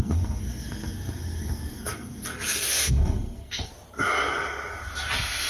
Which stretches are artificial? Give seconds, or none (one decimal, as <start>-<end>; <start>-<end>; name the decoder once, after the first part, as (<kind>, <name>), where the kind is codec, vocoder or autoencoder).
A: 0.0-3.7 (codec, SNAC)